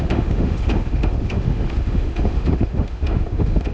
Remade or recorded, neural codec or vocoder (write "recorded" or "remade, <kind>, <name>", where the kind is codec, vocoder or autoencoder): remade, autoencoder, DAC-VAE